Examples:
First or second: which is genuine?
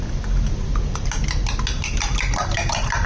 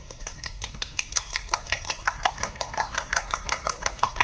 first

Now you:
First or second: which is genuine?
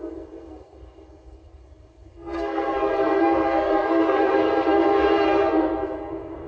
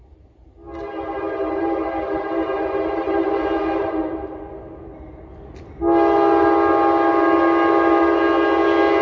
second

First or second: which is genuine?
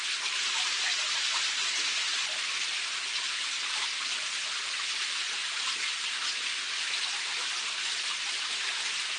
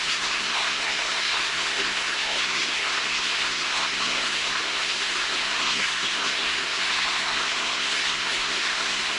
first